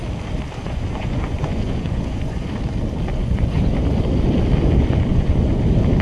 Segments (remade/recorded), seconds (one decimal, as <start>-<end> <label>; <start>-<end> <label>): 0.0-0.6 recorded; 0.6-2.5 remade; 2.5-3.2 recorded; 3.2-3.7 remade; 3.7-5.1 recorded; 5.1-5.6 remade; 5.6-6.0 recorded